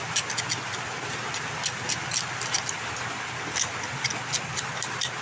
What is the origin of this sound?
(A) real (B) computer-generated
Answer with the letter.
A